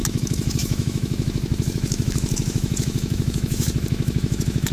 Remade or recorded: remade